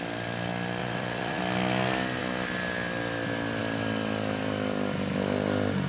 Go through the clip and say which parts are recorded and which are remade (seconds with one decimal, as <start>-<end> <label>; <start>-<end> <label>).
0.0-0.8 recorded; 0.8-1.4 remade; 1.4-5.9 recorded